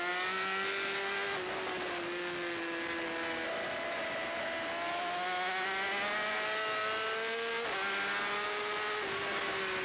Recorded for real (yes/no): yes